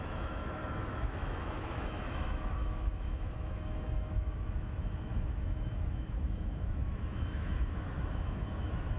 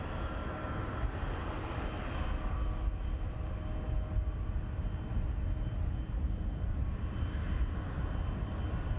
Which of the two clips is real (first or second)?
second